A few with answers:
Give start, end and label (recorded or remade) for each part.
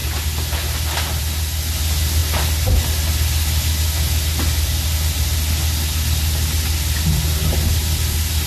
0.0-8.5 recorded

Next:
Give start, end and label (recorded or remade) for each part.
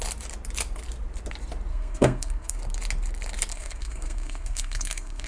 0.0-1.7 recorded; 1.7-2.6 remade; 2.6-3.5 recorded; 3.5-5.3 remade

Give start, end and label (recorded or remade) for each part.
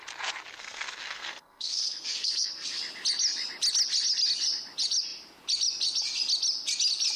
0.0-0.6 recorded; 0.6-2.8 remade; 2.8-7.2 recorded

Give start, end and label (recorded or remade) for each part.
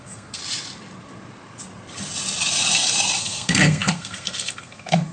0.0-0.4 remade; 0.4-3.2 recorded; 3.2-5.1 remade